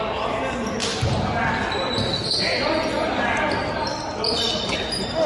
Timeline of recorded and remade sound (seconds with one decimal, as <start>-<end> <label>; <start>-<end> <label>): 0.0-5.3 recorded

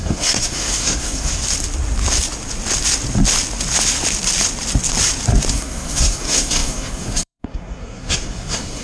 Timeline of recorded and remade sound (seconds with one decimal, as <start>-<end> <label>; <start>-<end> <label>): 0.0-1.4 remade; 1.4-5.5 recorded; 5.5-8.8 remade